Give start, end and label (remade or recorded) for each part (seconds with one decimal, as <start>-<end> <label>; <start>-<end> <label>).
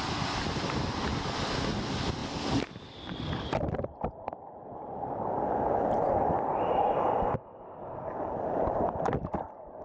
0.0-9.8 recorded